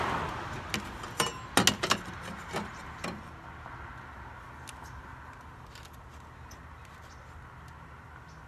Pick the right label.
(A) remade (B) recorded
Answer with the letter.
B